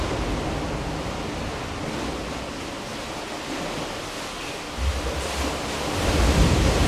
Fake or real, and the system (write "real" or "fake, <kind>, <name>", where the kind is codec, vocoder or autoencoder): real